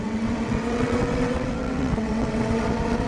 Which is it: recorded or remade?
remade